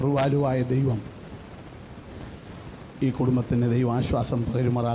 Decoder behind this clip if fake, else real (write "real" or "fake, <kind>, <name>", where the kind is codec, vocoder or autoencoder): real